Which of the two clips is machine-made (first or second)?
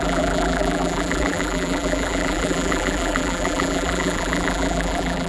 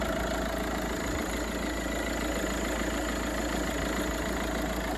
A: first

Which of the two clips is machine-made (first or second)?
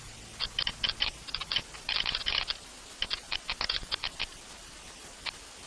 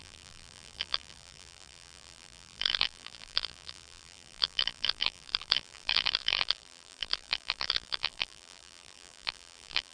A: second